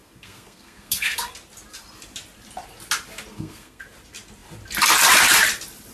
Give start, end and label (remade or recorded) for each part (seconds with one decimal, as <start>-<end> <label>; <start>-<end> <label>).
0.0-1.3 remade; 1.3-3.3 recorded; 3.3-3.8 remade; 3.8-5.9 recorded